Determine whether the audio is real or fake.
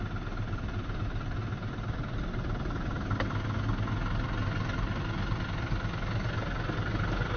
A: real